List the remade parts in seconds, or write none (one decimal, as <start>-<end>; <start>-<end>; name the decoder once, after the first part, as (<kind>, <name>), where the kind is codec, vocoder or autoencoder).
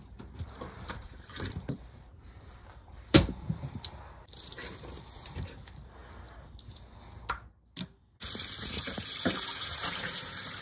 0.0-6.0 (vocoder, BigVGAN v2); 8.6-10.6